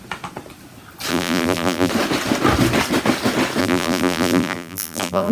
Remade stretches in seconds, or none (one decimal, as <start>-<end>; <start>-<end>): 1.1-1.9; 3.6-5.3